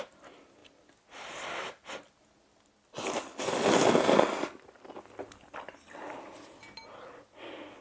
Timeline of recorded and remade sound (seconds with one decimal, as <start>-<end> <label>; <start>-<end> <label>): 0.0-7.8 recorded